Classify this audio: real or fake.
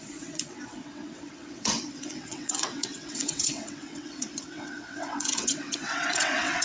fake